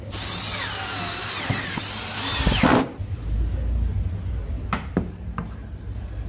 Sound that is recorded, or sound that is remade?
recorded